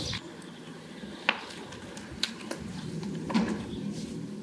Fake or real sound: real